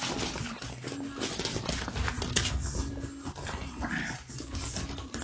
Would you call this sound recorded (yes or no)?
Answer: yes